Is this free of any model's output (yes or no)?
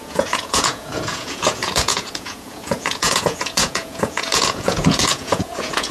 no